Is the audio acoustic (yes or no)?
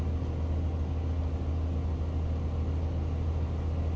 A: yes